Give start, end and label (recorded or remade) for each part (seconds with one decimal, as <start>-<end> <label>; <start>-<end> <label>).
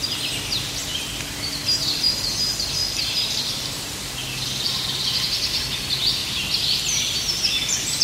0.0-0.8 recorded; 0.8-2.3 remade; 2.3-2.8 recorded; 2.8-3.5 remade; 3.5-4.2 recorded; 4.2-5.0 remade; 5.0-6.2 recorded; 6.2-8.0 remade